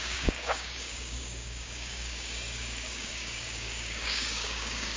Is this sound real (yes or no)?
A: no